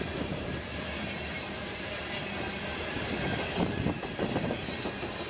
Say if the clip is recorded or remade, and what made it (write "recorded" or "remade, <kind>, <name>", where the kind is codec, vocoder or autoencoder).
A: remade, vocoder, BigVGAN v2